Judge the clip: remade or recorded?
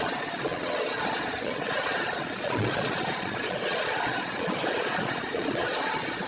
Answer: remade